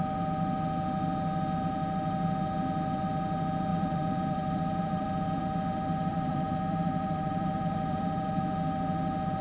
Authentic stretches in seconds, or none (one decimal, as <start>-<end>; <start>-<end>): 0.0-3.7; 5.4-6.1; 8.4-9.4